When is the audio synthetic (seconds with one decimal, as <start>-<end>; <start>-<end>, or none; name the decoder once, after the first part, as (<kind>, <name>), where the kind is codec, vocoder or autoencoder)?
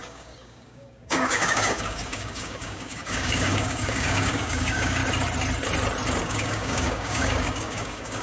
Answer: 0.0-5.0 (codec, DAC); 6.2-8.2